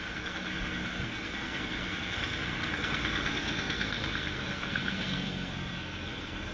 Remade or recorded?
remade